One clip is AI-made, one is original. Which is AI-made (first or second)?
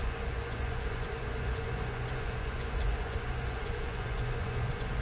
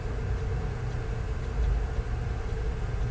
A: first